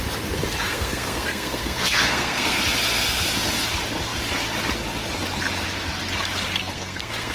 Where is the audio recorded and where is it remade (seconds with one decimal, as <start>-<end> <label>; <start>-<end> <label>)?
0.0-0.7 recorded; 0.7-2.6 remade; 2.6-6.6 recorded; 6.6-7.3 remade